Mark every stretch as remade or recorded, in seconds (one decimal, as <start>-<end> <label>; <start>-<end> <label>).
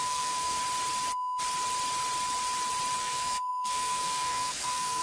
0.0-0.6 remade; 0.6-3.0 recorded; 3.0-5.0 remade